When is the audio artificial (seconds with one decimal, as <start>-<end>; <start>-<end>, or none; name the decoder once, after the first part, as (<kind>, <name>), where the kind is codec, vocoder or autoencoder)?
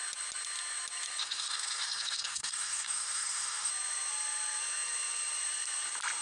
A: 1.2-3.7 (codec, SNAC)